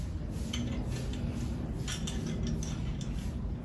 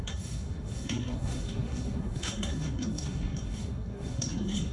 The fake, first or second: second